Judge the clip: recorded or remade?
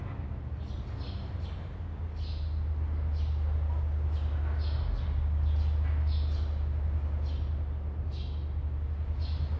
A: recorded